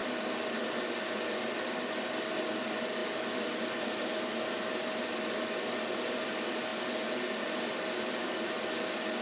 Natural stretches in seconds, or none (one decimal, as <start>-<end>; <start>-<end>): 0.0-9.2